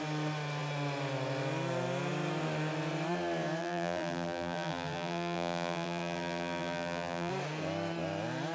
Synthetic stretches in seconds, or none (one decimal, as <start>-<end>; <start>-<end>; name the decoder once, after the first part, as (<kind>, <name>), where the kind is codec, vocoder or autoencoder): 3.6-7.3 (vocoder, BigVGAN v2)